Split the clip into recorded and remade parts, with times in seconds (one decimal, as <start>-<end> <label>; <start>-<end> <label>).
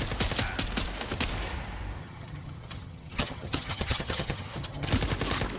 0.0-2.0 recorded; 2.0-4.9 remade; 4.9-5.6 recorded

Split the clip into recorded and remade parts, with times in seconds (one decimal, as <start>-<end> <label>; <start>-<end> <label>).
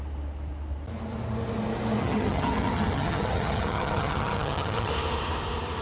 0.0-2.0 recorded; 2.0-4.9 remade; 4.9-5.8 recorded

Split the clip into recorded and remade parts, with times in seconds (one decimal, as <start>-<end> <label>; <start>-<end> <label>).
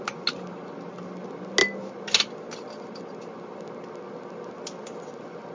0.0-5.5 recorded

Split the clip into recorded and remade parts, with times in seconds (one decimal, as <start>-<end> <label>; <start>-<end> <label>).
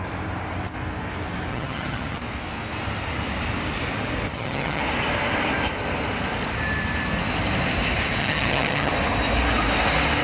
0.0-1.5 recorded; 1.5-2.2 remade; 2.2-4.3 recorded; 4.3-4.8 remade; 4.8-8.2 recorded; 8.2-8.9 remade; 8.9-10.2 recorded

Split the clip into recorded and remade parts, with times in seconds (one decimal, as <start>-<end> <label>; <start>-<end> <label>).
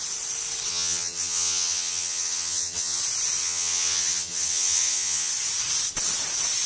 0.0-0.7 recorded; 0.7-3.0 remade; 3.0-3.4 recorded; 3.4-5.3 remade; 5.3-6.7 recorded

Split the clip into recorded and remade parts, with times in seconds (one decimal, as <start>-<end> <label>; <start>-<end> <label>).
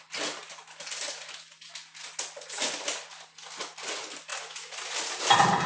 0.0-5.7 recorded